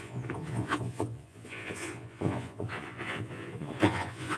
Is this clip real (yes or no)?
no